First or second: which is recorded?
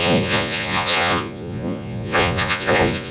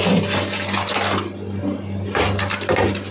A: second